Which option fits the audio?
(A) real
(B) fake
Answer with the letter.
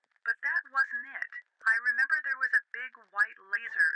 A